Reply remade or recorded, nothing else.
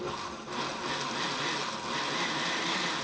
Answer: recorded